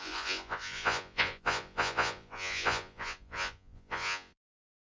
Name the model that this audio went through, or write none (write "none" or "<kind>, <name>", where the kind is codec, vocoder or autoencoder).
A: vocoder, Vocos